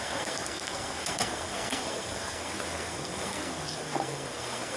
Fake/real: fake